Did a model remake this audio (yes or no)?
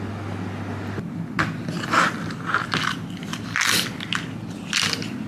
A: no